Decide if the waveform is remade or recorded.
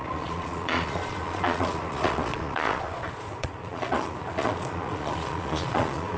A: remade